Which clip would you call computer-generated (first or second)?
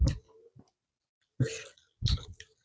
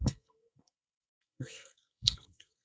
second